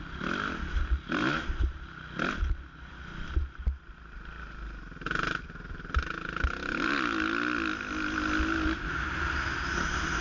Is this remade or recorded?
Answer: recorded